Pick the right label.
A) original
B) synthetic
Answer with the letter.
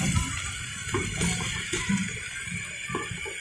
A